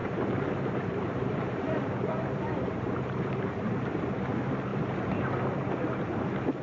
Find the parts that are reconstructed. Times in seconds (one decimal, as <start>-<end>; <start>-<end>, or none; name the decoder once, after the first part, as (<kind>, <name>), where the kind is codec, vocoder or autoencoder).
0.0-4.0 (vocoder, BigVGAN v2)